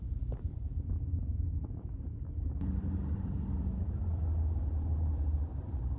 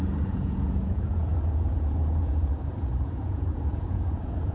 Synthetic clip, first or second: second